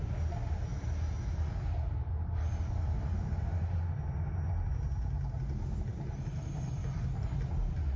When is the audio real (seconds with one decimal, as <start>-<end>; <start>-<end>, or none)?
0.0-8.0